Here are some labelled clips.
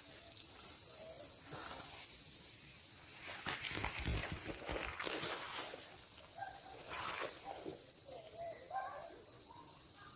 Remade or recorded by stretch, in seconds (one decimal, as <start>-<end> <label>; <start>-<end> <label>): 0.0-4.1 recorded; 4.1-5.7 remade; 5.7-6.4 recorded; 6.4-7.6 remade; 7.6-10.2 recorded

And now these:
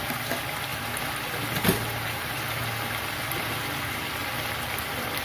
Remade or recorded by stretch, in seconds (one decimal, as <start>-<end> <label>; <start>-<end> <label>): 0.0-5.2 recorded

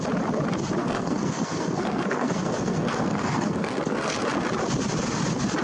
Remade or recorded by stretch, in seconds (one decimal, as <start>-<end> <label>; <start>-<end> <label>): 0.0-0.8 recorded; 0.8-4.2 remade; 4.2-5.6 recorded

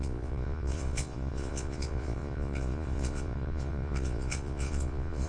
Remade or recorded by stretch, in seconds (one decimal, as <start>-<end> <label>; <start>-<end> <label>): 0.0-5.3 remade

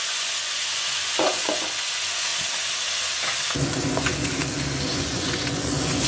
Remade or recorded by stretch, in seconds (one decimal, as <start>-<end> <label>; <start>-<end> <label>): 0.0-2.3 remade; 2.3-3.5 recorded; 3.5-4.3 remade; 4.3-4.9 recorded; 4.9-6.1 remade